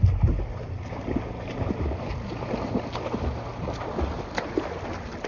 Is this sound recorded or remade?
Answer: recorded